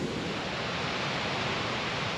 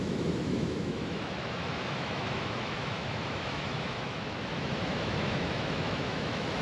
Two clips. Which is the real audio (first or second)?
first